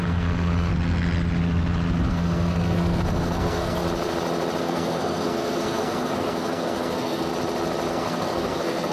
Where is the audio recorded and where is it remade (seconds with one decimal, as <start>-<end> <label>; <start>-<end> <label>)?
0.0-0.7 remade; 0.7-2.1 recorded; 2.1-3.8 remade; 3.8-4.6 recorded; 4.6-7.3 remade; 7.3-7.9 recorded; 7.9-8.9 remade